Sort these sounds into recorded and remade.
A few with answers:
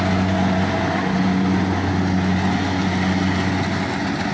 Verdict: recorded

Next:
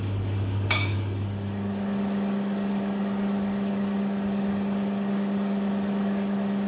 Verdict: remade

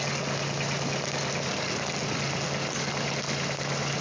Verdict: recorded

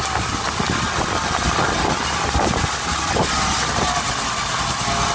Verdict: recorded